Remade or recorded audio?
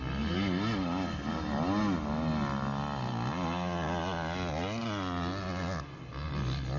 recorded